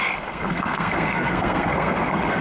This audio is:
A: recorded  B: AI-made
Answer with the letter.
B